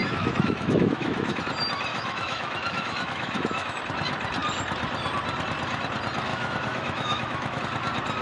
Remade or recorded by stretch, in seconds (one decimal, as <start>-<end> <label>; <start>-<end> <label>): 0.0-1.4 remade; 1.4-1.9 recorded; 1.9-3.8 remade; 3.8-6.3 recorded; 6.3-7.6 remade; 7.6-8.2 recorded